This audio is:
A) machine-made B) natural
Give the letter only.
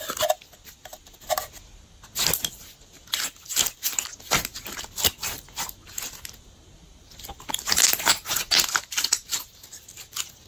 B